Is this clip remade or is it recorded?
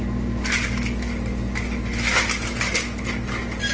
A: recorded